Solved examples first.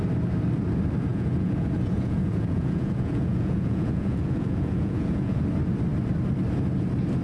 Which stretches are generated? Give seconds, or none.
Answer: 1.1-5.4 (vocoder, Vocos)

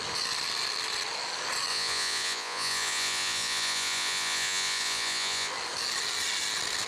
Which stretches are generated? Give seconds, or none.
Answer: 1.7-5.5 (vocoder, Vocos)